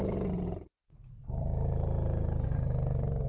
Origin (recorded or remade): recorded